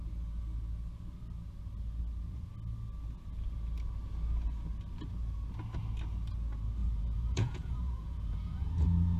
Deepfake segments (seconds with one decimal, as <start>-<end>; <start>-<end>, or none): 6.8-9.2